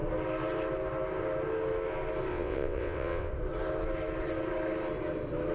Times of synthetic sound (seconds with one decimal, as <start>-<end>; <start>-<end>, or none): 2.3-3.3